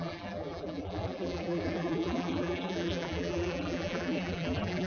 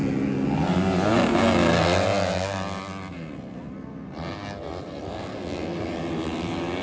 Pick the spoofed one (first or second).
first